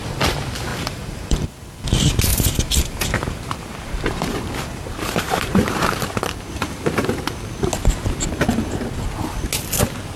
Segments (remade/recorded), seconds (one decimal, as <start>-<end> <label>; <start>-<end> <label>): 0.0-0.7 recorded; 0.7-1.7 remade; 1.7-2.3 recorded; 2.3-7.2 remade; 7.2-10.2 recorded